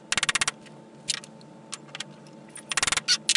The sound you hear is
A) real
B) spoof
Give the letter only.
A